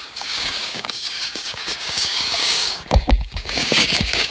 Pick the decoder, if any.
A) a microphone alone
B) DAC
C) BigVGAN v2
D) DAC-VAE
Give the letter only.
B